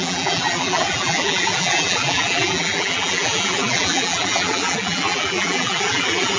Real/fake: fake